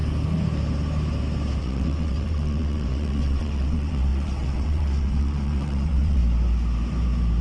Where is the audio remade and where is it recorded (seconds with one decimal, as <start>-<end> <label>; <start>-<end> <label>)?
0.0-1.6 recorded; 1.6-6.2 remade; 6.2-7.4 recorded